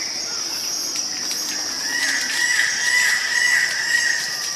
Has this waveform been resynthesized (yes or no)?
no